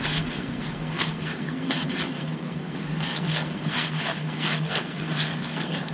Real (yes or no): no